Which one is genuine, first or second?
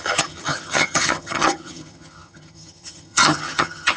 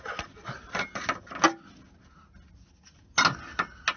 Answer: second